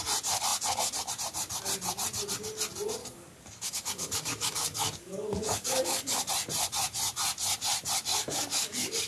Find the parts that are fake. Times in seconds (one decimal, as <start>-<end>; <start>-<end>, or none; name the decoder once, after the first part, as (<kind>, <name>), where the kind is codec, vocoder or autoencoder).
3.0-6.3 (codec, DAC); 8.1-9.1